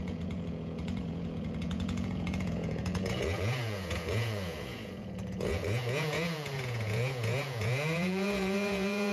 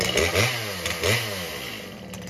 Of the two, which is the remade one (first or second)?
first